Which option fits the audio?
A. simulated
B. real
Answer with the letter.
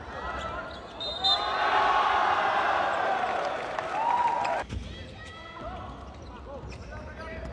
B